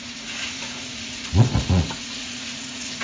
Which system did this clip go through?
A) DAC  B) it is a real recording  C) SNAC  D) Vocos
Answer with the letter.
D